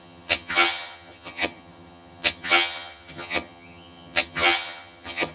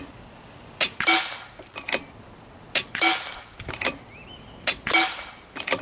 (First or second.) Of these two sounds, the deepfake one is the first